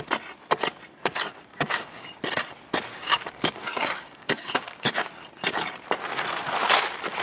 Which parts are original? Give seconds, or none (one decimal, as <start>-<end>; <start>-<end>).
0.0-1.5; 2.2-2.9; 5.1-7.2